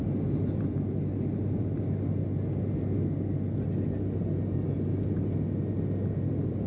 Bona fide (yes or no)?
yes